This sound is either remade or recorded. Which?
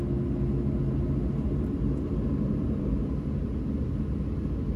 recorded